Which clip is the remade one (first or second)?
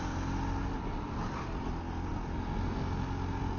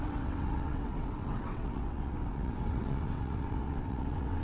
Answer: second